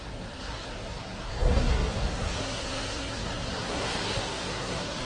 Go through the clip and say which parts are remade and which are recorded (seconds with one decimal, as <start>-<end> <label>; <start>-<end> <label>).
0.0-5.0 remade